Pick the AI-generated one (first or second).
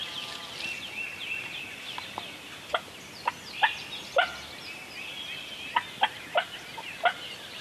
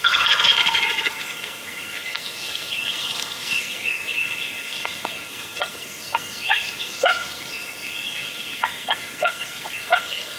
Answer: second